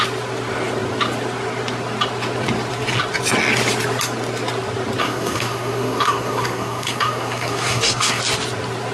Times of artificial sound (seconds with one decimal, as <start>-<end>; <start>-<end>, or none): 5.0-8.2